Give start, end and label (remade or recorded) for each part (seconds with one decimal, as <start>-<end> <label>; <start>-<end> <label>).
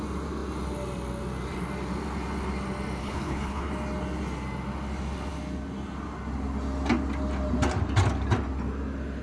0.0-3.0 recorded; 3.0-3.7 remade; 3.7-9.2 recorded